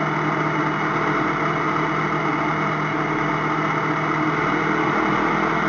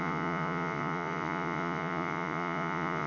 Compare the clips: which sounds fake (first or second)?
second